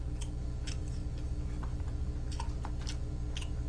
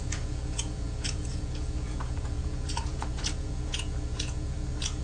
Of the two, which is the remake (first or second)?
second